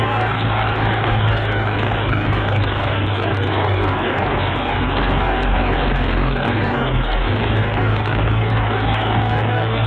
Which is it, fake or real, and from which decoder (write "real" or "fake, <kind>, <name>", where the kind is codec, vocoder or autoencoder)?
fake, codec, DAC